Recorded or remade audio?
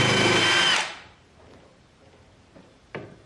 remade